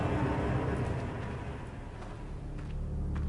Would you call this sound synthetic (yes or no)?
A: no